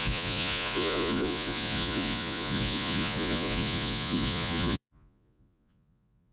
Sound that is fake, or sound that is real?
fake